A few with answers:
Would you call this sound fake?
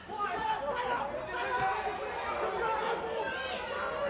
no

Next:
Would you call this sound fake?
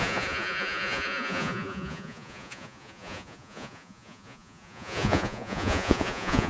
yes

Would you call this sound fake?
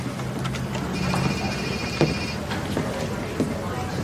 no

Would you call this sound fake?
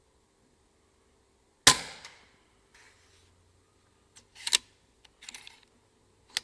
no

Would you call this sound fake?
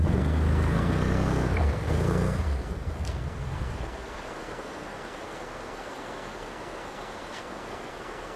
yes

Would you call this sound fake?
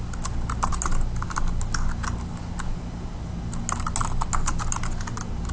no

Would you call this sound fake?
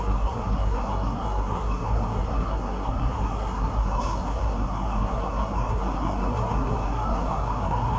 yes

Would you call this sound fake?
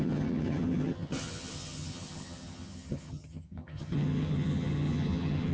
yes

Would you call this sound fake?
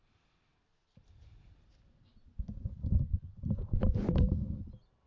no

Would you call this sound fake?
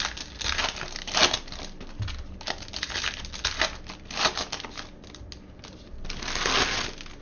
no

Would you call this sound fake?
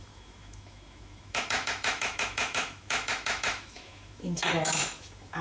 yes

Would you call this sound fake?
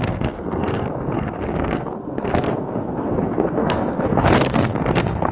yes